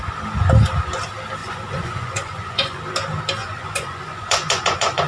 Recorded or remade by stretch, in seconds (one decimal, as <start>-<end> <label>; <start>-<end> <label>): 0.0-1.4 recorded; 1.4-2.8 remade; 2.8-3.4 recorded; 3.4-5.1 remade